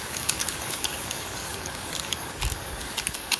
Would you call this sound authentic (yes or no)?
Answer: no